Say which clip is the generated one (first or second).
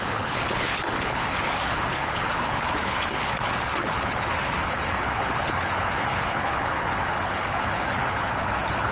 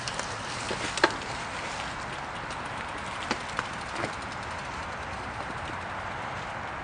first